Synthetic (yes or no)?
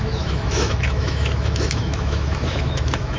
yes